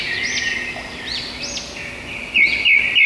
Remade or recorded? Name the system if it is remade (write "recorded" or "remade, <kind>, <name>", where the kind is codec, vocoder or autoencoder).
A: recorded